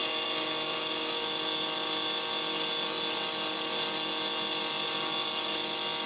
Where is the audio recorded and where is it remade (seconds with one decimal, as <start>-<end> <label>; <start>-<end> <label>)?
0.0-6.1 recorded